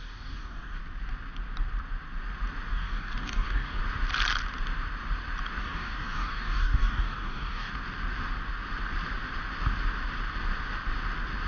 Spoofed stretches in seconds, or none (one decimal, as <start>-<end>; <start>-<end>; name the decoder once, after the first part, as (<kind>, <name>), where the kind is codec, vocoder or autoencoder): 0.0-0.8 (codec, DAC); 2.7-3.8; 5.6-7.7